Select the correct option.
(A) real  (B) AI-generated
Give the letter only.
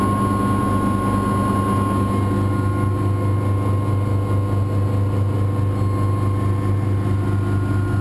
A